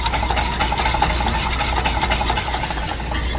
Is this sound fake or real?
real